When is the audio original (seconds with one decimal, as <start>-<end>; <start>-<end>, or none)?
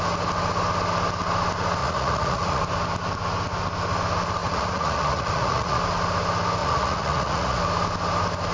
0.0-1.8; 2.6-4.4; 5.8-6.6; 7.6-8.5